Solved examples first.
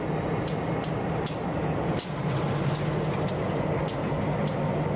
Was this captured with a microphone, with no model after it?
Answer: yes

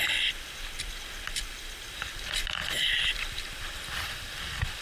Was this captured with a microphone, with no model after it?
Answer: yes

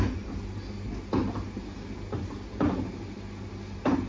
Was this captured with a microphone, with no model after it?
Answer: yes